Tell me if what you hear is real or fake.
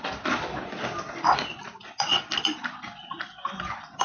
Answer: real